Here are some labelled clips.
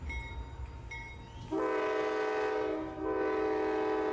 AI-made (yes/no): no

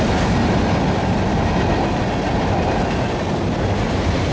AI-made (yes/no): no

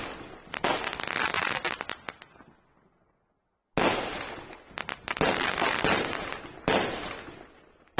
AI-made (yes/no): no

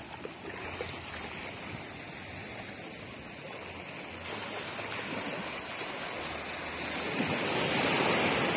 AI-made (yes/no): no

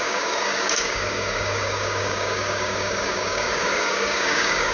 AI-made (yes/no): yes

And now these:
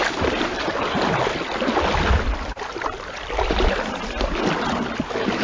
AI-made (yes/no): no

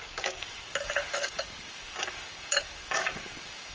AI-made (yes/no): yes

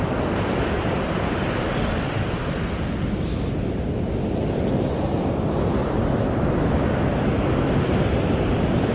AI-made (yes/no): no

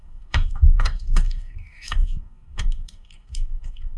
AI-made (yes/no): yes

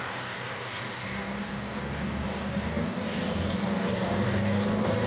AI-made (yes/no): yes